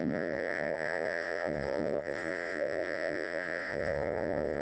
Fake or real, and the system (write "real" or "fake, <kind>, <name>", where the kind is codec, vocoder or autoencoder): fake, vocoder, Vocos